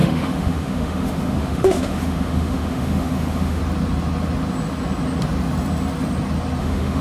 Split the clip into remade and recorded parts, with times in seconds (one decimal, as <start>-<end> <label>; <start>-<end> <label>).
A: 0.0-3.6 remade; 3.6-6.6 recorded; 6.6-7.0 remade